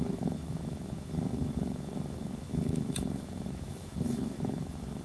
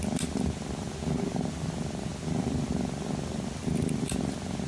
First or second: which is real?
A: second